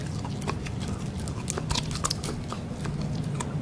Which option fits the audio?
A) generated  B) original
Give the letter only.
B